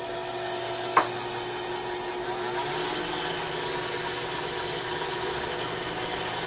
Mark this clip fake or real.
real